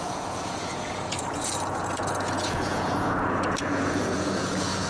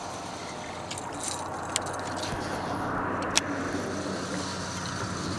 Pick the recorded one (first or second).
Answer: second